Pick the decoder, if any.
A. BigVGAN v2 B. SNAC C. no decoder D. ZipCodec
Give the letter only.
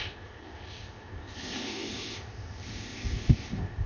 D